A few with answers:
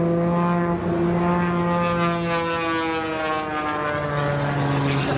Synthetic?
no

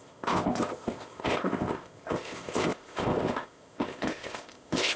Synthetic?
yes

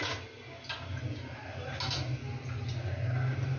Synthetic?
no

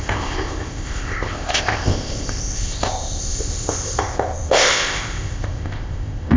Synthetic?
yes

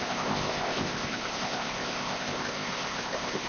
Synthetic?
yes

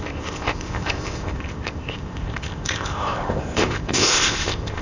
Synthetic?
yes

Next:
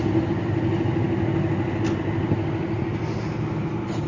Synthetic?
no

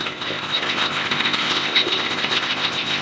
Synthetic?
yes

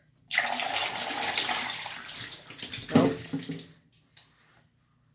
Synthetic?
no